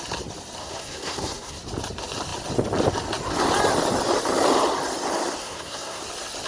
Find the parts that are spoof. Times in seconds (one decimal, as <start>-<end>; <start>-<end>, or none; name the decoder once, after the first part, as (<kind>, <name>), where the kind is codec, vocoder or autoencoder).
0.6-1.6 (codec, SNAC); 5.4-6.0